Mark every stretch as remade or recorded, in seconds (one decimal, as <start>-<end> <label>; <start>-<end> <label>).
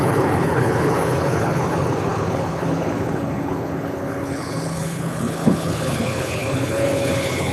0.0-7.5 remade